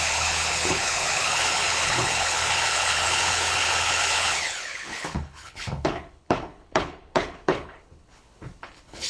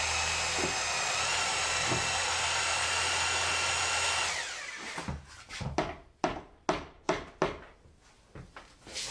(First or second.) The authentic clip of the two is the second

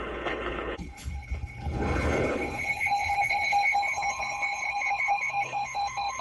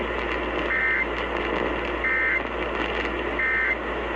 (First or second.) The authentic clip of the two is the second